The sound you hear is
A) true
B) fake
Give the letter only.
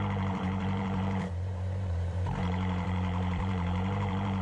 B